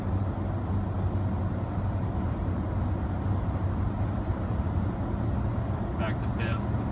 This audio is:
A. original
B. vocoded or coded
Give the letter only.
A